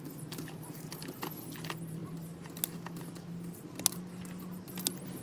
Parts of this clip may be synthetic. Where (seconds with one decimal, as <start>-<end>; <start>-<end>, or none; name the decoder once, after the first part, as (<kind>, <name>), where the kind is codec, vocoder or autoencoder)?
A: none